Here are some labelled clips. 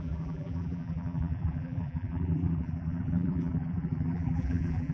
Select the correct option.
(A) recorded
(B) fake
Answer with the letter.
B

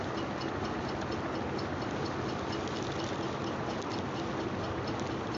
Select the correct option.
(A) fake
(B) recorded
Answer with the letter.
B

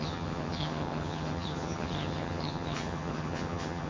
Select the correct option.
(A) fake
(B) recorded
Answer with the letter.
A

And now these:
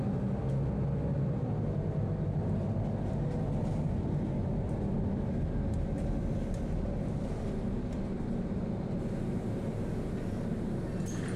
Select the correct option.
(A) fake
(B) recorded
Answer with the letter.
B